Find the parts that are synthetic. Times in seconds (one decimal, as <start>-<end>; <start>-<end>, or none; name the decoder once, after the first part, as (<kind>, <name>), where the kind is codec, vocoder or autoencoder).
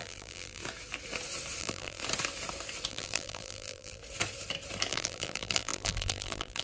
0.0-0.6 (vocoder, BigVGAN v2); 1.6-2.0; 2.9-4.0; 4.9-6.6